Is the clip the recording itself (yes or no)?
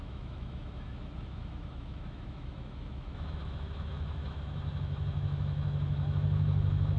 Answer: no